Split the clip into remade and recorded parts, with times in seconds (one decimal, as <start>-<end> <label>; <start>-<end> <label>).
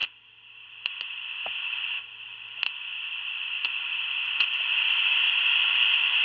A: 0.0-6.2 recorded